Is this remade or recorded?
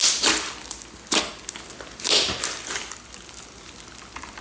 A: recorded